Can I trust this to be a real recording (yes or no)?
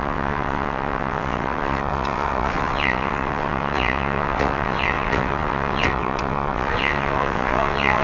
no